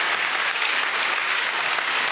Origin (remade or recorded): remade